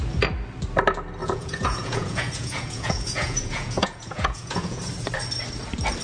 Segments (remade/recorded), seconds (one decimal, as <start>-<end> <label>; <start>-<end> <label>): 0.0-1.2 recorded; 1.2-4.8 remade; 4.8-6.0 recorded